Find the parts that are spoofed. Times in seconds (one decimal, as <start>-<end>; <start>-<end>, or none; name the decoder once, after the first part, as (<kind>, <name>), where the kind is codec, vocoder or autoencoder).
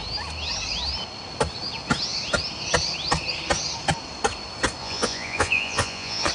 4.8-6.3 (vocoder, Vocos)